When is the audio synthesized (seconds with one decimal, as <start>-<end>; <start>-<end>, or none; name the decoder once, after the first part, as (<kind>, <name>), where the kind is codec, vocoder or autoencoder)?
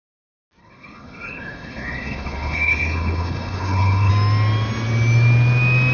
0.6-4.1 (codec, HILCodec)